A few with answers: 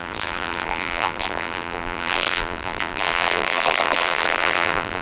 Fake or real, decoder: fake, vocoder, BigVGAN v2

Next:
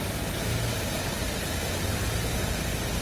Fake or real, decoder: real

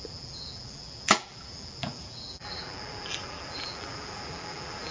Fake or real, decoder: fake, vocoder, BigVGAN v2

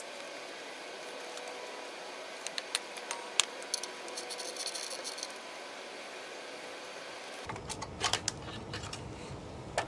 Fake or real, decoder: real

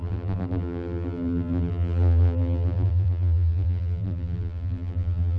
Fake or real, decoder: fake, vocoder, BigVGAN v2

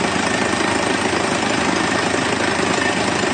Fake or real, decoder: fake, vocoder, BigVGAN v2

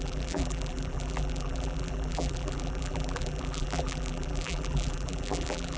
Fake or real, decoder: fake, vocoder, BigVGAN v2